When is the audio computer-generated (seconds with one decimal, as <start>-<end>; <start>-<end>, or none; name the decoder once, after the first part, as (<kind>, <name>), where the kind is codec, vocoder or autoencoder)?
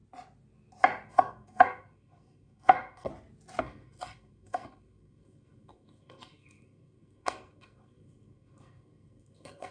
1.1-3.1 (codec, SNAC); 3.6-9.7